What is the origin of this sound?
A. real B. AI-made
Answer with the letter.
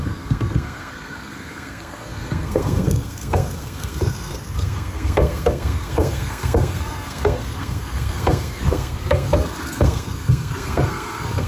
B